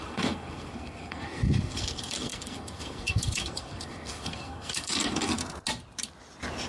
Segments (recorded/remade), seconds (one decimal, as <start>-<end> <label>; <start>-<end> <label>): 0.0-5.4 remade; 5.4-6.7 recorded